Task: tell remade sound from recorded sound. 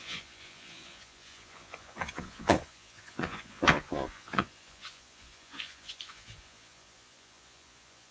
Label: remade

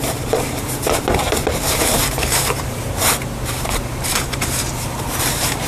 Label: remade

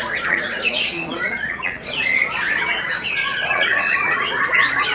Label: remade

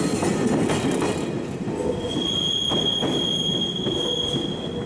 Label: recorded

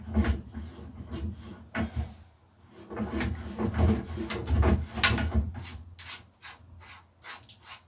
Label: recorded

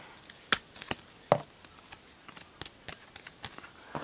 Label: recorded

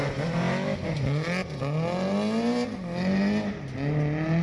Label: recorded